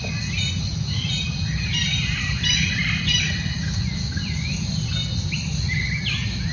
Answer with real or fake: real